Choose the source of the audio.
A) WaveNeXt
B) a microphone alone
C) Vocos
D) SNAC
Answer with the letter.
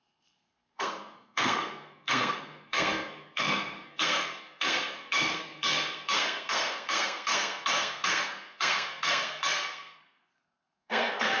D